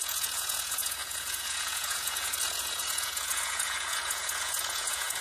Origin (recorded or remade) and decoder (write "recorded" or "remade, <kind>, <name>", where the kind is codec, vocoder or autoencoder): remade, vocoder, Vocos